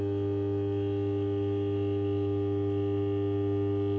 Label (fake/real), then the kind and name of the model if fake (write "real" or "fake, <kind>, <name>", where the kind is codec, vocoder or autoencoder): real